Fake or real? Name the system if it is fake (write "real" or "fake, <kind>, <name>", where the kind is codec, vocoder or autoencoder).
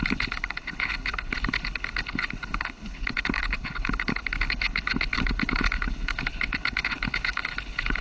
fake, codec, HILCodec